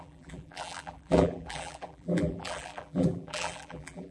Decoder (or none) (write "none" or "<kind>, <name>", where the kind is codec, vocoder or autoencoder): vocoder, BigVGAN v2